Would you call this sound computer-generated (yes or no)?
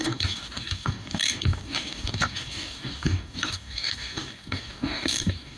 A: yes